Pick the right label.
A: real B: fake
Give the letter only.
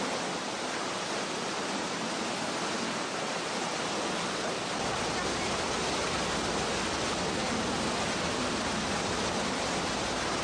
A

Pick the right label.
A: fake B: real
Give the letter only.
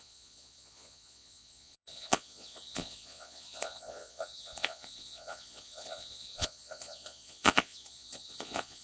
A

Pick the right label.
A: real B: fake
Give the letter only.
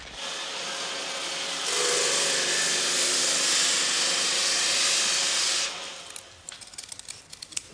A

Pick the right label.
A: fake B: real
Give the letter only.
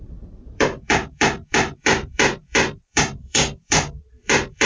A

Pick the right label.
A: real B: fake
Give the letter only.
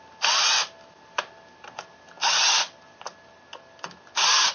A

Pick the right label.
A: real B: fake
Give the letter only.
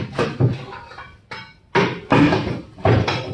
A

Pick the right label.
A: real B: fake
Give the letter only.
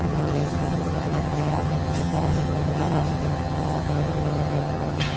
B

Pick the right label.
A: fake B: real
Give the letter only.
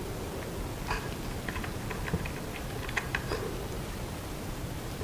B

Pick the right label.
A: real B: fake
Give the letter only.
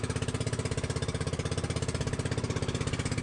A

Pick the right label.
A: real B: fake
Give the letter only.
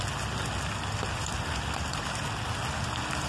A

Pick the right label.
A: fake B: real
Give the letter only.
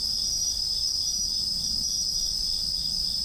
A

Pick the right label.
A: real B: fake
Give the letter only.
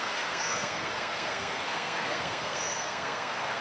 B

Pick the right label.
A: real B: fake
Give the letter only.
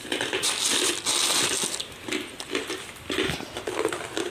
A